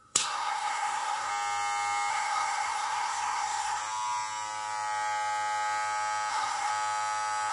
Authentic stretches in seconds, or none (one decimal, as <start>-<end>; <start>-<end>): 1.3-2.1; 3.8-6.3; 6.7-7.5